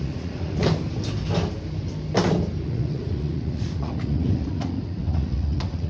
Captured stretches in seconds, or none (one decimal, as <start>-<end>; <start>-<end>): 0.6-2.6